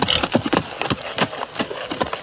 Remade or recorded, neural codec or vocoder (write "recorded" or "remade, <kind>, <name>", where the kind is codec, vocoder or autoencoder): recorded